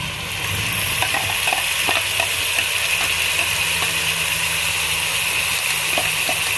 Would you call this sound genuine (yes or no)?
yes